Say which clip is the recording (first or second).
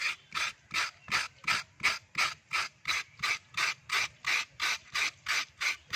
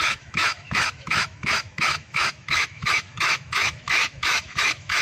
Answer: first